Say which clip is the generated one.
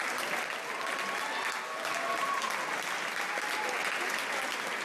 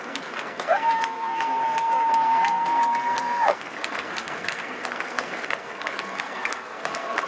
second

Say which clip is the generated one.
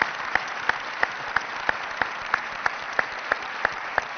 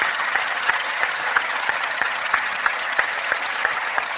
second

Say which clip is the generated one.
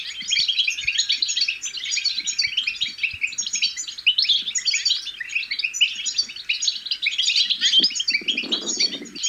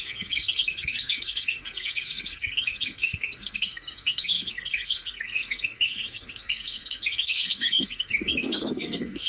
second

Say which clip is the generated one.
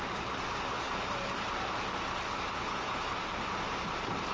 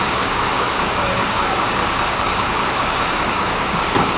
second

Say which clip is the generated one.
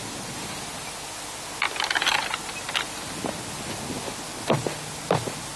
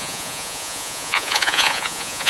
second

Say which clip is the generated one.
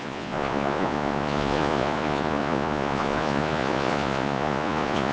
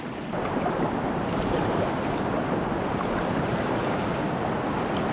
first